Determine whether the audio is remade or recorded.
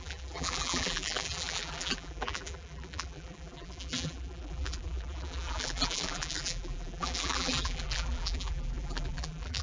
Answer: remade